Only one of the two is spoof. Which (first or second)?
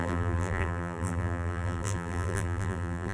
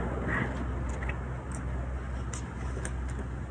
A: first